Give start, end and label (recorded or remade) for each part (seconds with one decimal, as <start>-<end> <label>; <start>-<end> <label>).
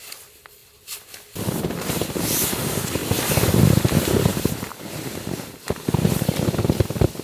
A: 0.0-4.3 recorded; 4.3-5.1 remade; 5.1-7.2 recorded